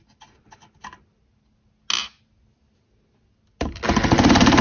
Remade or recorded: recorded